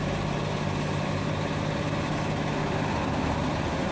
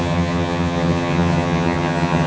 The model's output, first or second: second